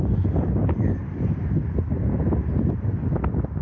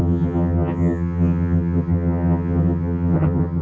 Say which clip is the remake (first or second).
second